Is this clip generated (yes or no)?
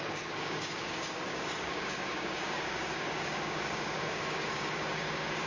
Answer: yes